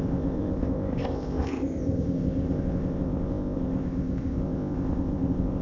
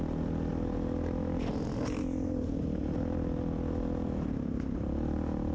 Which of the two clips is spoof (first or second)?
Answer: first